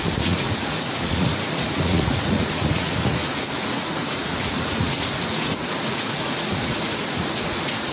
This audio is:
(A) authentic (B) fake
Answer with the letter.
B